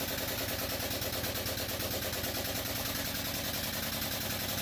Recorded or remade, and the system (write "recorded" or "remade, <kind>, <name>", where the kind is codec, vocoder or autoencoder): recorded